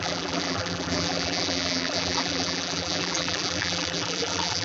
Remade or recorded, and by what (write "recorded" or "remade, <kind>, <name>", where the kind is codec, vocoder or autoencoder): remade, vocoder, BigVGAN v2